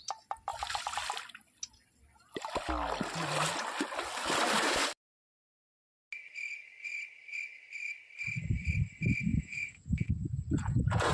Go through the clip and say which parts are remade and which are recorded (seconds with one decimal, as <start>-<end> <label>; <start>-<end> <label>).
0.0-9.3 recorded; 9.3-11.1 remade